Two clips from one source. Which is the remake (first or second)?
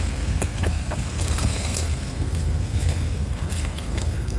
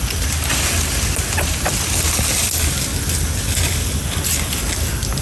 first